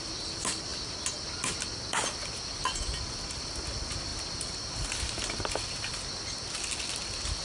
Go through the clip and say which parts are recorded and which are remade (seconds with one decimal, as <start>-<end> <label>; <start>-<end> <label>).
0.0-7.4 recorded